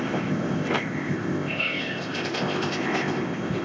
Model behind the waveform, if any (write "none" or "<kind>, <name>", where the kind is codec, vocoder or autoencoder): codec, ZipCodec